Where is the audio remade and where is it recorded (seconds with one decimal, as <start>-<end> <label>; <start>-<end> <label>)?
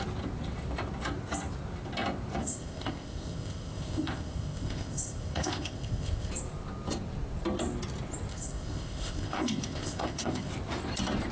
0.0-2.4 recorded; 2.4-6.3 remade; 6.3-8.3 recorded; 8.3-10.5 remade; 10.5-11.3 recorded